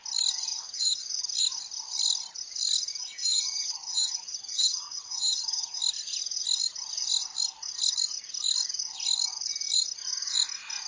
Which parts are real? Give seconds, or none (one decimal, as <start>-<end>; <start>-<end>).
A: 0.0-0.5; 1.0-2.9; 5.8-10.9

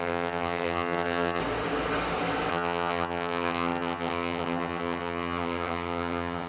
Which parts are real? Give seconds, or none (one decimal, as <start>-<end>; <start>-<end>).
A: 1.4-2.5

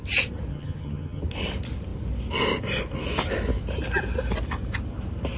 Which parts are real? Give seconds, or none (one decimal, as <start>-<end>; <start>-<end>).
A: 0.0-0.5; 1.2-5.4

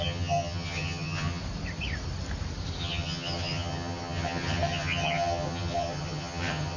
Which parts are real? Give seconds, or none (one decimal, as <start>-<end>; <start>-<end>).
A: 1.4-2.8

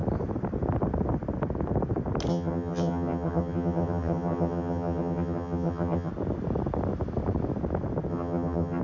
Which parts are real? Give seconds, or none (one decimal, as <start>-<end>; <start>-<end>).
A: 0.0-2.3; 6.1-8.1

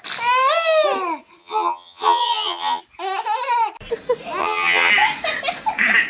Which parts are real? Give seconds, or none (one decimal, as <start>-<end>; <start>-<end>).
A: 0.0-1.4; 2.8-4.4; 4.9-6.1

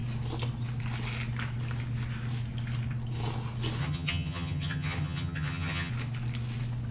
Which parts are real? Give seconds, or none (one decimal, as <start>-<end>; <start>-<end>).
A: 0.0-3.8; 5.9-6.9